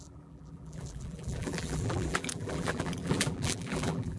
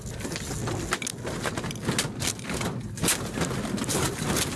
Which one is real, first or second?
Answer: second